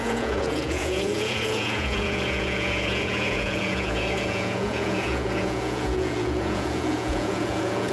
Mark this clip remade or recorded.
remade